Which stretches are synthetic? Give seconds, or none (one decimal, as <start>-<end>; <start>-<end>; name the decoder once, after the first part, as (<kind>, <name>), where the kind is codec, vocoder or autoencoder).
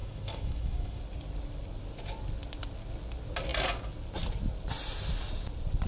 0.0-1.0 (autoencoder, DAC-VAE)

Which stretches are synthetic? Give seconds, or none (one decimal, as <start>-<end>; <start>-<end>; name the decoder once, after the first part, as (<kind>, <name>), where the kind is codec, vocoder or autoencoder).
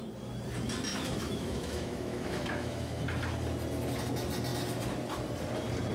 0.9-3.0 (autoencoder, DAC-VAE)